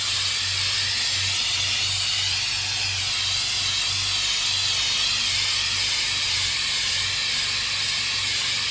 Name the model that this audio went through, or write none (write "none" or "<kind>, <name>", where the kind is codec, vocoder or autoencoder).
none